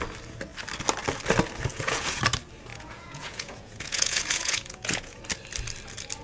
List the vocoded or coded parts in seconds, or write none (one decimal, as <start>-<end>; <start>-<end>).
1.7-2.2; 2.7-5.2